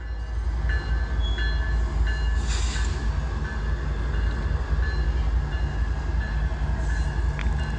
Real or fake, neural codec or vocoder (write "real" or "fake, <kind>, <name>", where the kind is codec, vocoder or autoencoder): real